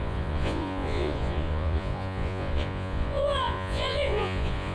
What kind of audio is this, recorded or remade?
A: remade